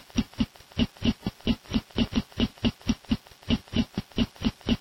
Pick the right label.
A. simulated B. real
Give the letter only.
B